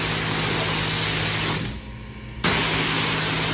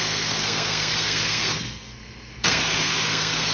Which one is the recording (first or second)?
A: first